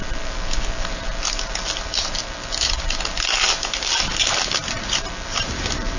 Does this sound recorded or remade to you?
remade